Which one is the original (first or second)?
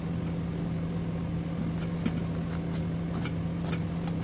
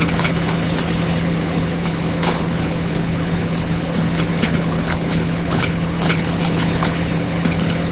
first